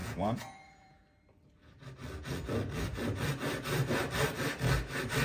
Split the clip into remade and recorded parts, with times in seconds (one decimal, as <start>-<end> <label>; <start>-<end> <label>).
0.0-1.0 remade; 1.0-5.2 recorded